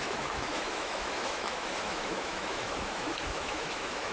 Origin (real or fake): fake